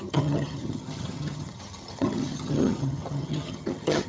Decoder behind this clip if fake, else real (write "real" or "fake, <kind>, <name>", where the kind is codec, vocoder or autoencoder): fake, vocoder, HiFi-GAN